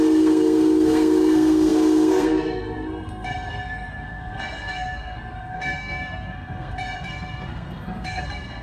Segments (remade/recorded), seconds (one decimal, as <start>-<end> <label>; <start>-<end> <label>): 0.0-8.6 remade